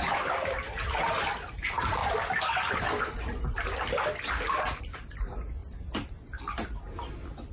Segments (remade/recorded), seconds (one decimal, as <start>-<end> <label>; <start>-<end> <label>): 0.0-7.5 recorded